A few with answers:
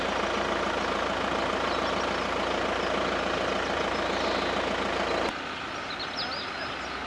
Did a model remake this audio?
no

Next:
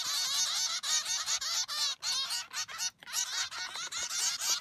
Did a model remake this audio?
no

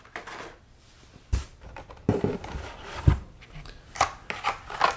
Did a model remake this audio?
no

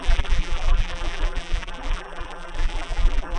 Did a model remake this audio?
yes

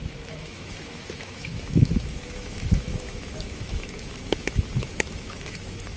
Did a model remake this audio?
yes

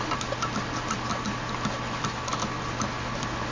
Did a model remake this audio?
no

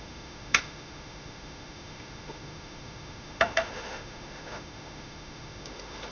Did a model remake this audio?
yes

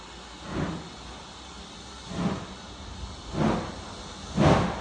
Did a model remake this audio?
no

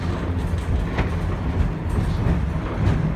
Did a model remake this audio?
no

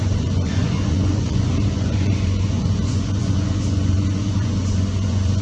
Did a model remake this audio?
yes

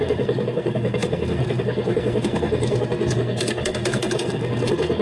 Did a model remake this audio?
yes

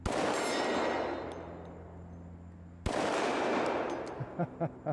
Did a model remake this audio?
no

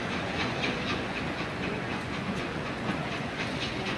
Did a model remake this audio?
yes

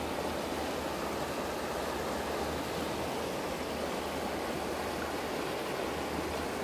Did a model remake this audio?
no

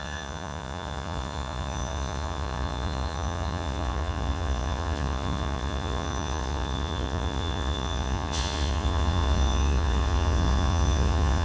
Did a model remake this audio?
yes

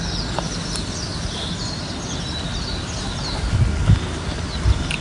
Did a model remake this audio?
no